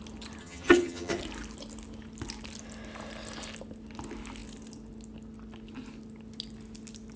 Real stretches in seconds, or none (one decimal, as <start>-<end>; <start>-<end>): 0.0-0.4; 1.2-7.2